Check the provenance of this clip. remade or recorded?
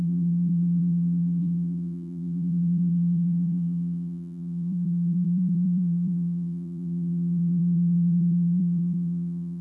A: remade